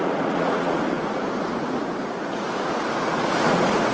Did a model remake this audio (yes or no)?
yes